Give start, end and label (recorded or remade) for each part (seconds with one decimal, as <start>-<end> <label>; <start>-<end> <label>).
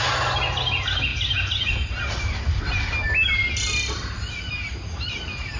0.0-5.6 recorded